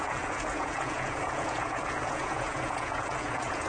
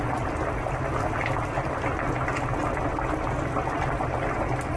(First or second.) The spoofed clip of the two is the first